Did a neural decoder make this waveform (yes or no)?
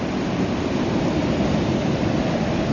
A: no